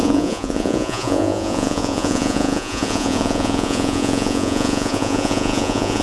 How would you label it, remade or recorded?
remade